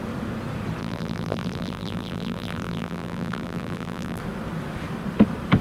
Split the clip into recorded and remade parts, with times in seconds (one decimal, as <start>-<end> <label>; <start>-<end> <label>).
0.0-0.8 recorded; 0.8-4.2 remade; 4.2-5.6 recorded

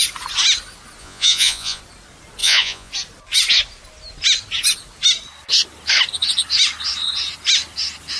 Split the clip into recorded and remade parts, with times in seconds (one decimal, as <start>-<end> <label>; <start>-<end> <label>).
0.0-1.0 recorded; 1.0-1.8 remade; 1.8-2.4 recorded; 2.4-2.9 remade; 2.9-8.2 recorded

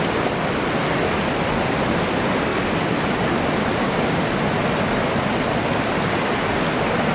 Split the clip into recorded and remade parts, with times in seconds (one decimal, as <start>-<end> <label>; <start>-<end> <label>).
0.0-7.1 recorded

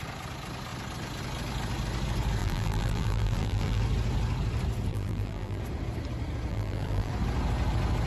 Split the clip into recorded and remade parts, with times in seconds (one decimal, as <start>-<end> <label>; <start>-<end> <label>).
0.0-2.4 recorded; 2.4-3.8 remade; 3.8-4.9 recorded; 4.9-5.6 remade; 5.6-6.5 recorded; 6.5-7.1 remade; 7.1-8.1 recorded

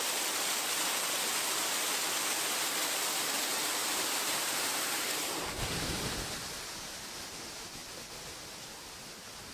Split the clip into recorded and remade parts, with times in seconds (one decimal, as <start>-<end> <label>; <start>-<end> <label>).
0.0-3.8 recorded; 3.8-5.6 remade; 5.6-9.5 recorded

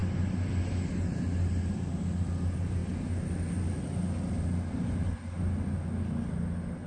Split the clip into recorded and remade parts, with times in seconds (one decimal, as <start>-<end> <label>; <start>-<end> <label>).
0.0-6.9 recorded

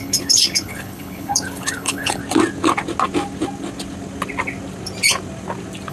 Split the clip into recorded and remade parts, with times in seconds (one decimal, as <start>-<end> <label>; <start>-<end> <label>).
0.0-2.2 remade; 2.2-5.9 recorded

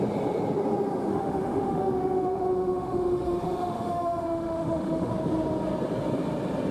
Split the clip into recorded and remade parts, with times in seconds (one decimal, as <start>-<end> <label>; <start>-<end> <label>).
0.0-1.1 recorded; 1.1-5.1 remade; 5.1-6.7 recorded